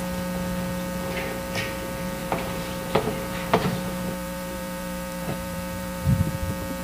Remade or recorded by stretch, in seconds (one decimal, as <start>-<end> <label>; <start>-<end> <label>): 0.0-2.2 recorded; 2.2-6.3 remade; 6.3-6.8 recorded